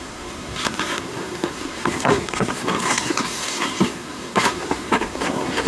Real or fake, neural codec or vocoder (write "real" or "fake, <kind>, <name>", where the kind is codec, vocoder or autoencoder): fake, codec, SNAC